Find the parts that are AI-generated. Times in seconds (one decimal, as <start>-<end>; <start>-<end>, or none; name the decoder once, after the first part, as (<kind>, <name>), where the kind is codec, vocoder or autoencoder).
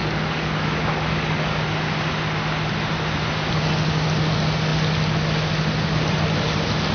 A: 0.0-1.6 (codec, DAC)